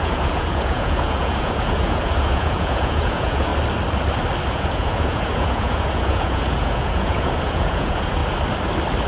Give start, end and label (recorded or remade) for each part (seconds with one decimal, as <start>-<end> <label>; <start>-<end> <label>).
0.0-3.5 remade; 3.5-4.5 recorded; 4.5-8.2 remade; 8.2-9.1 recorded